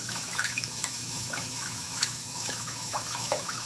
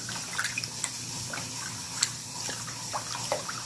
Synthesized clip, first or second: first